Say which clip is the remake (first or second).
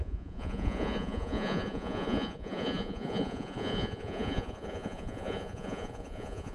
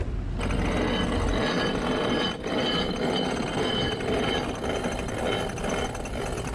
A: first